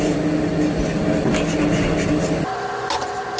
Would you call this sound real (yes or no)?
yes